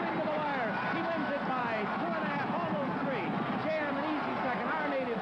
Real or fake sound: real